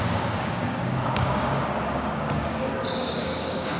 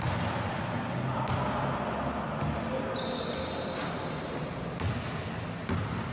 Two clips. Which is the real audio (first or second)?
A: second